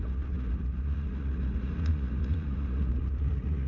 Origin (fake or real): fake